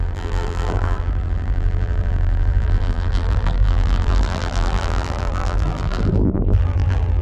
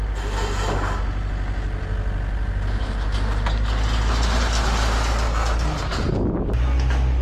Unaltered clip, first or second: second